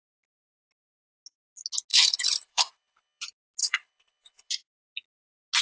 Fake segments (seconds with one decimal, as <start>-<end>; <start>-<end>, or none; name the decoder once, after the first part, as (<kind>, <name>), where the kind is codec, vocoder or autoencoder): 1.9-3.2 (codec, HILCodec); 3.6-4.5